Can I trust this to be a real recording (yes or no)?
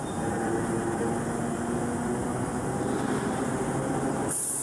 yes